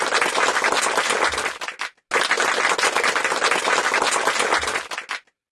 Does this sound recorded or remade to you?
recorded